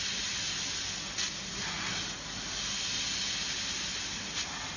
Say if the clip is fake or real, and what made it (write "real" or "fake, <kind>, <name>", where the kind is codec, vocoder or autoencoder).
real